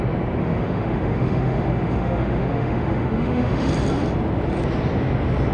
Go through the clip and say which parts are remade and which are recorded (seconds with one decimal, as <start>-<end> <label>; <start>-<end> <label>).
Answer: 0.0-0.4 recorded; 0.4-3.7 remade; 3.7-5.5 recorded

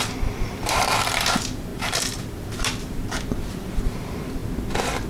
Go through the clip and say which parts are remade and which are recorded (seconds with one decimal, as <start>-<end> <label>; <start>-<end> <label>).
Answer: 0.0-3.0 remade; 3.0-3.5 recorded; 3.5-4.4 remade; 4.4-5.1 recorded